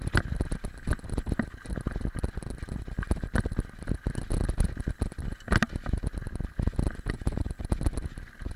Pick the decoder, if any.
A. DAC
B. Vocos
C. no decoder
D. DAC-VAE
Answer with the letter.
C